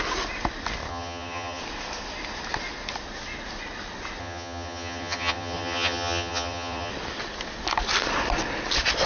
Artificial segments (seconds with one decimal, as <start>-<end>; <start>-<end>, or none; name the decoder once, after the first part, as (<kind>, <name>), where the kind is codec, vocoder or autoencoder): 0.9-1.6 (vocoder, HiFi-GAN); 4.2-6.9